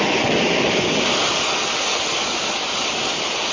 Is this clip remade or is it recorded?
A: recorded